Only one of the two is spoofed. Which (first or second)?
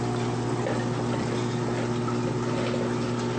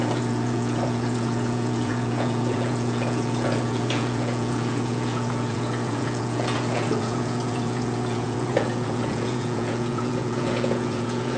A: second